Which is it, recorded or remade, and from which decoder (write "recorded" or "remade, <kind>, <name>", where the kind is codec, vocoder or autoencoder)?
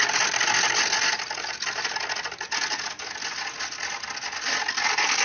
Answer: recorded